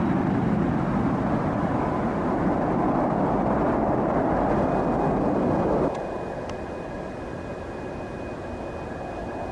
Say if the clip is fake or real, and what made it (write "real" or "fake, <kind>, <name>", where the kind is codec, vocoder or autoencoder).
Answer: real